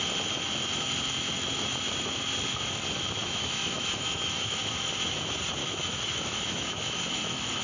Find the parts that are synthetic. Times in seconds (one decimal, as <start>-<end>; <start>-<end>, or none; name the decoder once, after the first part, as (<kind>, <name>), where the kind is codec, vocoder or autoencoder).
3.2-4.9 (autoencoder, DAC-VAE); 5.6-7.6